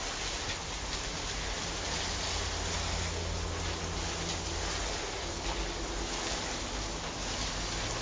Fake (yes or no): no